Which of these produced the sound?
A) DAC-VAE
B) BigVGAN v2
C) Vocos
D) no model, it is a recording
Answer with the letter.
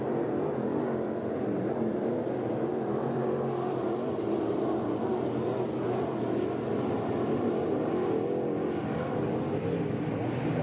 D